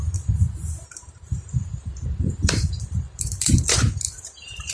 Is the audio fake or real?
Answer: fake